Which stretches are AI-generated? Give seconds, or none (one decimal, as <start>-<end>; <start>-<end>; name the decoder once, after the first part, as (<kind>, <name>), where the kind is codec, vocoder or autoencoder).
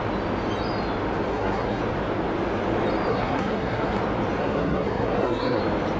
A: 1.3-1.8 (codec, SNAC); 3.1-4.0; 4.4-5.6